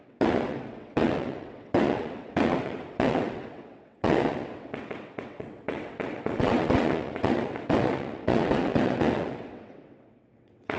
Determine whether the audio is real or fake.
fake